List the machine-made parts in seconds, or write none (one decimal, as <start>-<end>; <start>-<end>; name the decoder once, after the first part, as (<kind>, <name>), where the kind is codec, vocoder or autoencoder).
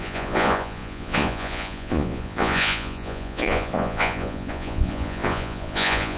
0.0-6.2 (vocoder, Vocos)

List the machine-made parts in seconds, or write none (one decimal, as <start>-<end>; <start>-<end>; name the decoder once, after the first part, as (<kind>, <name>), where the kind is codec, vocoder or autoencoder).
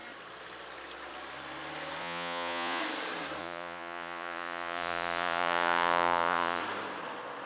2.0-2.8 (vocoder, Vocos); 3.4-6.6